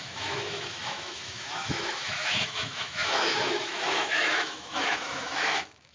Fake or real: fake